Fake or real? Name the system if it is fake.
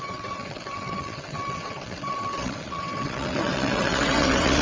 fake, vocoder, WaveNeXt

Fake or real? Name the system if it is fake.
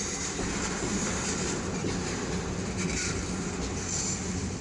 real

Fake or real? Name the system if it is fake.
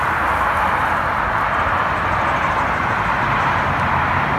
real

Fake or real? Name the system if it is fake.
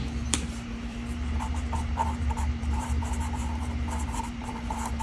fake, vocoder, BigVGAN v2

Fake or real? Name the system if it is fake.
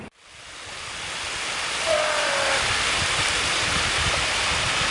real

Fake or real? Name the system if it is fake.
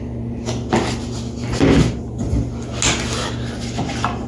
real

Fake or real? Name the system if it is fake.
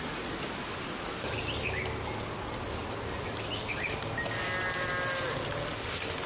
real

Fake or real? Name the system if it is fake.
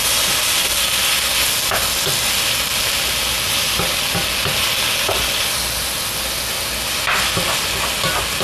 real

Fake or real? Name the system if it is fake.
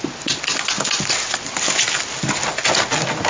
real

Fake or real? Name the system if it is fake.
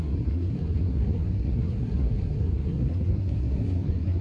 fake, codec, SNAC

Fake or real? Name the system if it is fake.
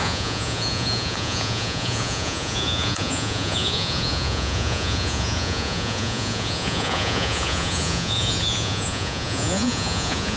fake, vocoder, Vocos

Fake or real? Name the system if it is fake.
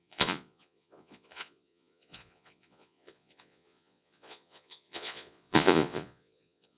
fake, vocoder, Vocos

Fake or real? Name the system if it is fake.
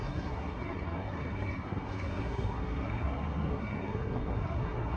fake, codec, SNAC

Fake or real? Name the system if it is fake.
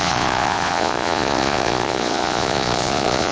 fake, vocoder, Vocos